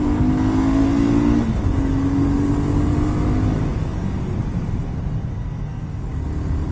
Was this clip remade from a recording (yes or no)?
no